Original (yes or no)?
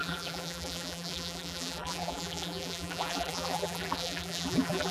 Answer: no